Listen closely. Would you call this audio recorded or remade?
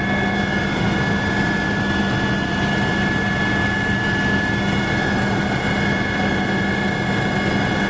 recorded